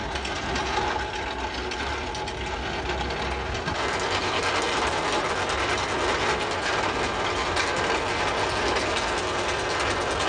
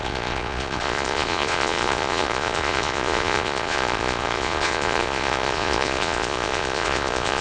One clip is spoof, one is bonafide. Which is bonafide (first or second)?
first